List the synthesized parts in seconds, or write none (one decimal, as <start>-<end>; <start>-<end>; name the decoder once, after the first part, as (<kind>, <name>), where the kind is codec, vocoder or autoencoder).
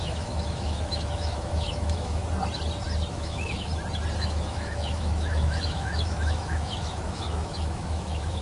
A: 0.0-2.2 (autoencoder, DAC-VAE); 3.1-3.7; 4.2-8.4